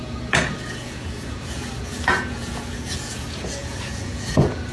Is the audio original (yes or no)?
no